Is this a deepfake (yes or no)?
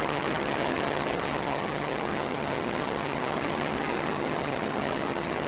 yes